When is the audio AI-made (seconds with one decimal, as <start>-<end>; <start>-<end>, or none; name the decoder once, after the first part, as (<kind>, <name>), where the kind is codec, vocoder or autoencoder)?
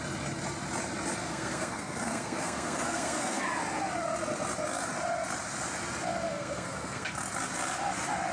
1.2-3.4 (codec, SNAC); 6.3-7.1